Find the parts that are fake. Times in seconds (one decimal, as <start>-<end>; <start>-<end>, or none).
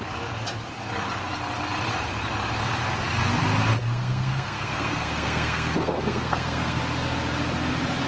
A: 3.8-6.8